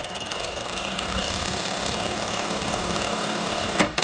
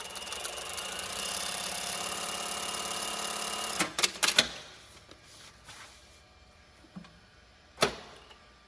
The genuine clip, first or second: second